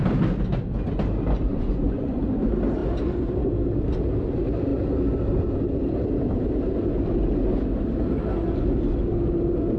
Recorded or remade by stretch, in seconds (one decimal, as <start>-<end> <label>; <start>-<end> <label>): 0.0-1.5 recorded; 1.5-2.2 remade; 2.2-9.8 recorded